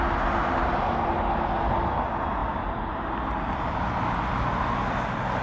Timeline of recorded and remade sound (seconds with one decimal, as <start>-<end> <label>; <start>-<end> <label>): 0.0-5.4 recorded